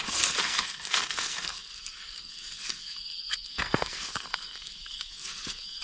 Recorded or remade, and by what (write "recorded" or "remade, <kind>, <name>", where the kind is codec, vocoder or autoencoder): remade, codec, SNAC